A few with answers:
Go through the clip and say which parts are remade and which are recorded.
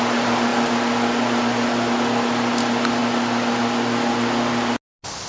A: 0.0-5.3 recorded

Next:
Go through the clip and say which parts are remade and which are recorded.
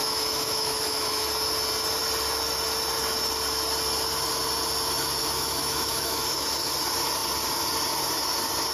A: 0.0-1.3 remade; 1.3-5.2 recorded; 5.2-6.7 remade; 6.7-8.7 recorded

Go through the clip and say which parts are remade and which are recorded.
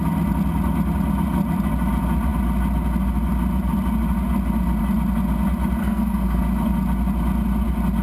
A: 0.0-5.8 recorded; 5.8-6.4 remade; 6.4-8.0 recorded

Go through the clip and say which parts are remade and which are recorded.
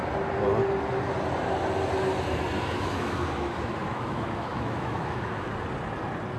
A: 0.0-2.7 recorded; 2.7-5.5 remade; 5.5-6.4 recorded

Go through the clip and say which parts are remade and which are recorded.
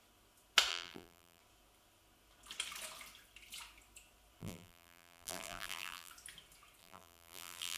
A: 0.0-0.7 recorded; 0.7-1.4 remade; 1.4-4.4 recorded; 4.4-6.1 remade; 6.1-6.8 recorded; 6.8-7.8 remade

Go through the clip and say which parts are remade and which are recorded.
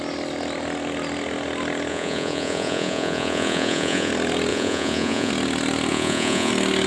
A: 0.0-1.9 recorded; 1.9-4.1 remade; 4.1-4.5 recorded; 4.5-5.3 remade; 5.3-5.9 recorded; 5.9-6.5 remade; 6.5-6.9 recorded